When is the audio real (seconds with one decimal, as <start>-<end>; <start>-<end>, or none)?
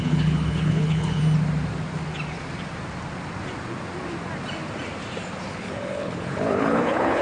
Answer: 1.2-5.5